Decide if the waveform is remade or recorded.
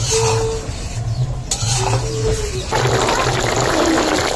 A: recorded